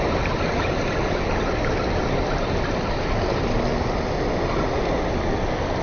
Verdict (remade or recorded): recorded